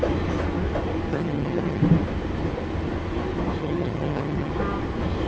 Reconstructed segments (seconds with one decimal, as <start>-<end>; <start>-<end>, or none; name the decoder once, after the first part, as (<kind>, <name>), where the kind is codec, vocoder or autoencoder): 1.1-1.8 (vocoder, HiFi-GAN); 3.6-4.5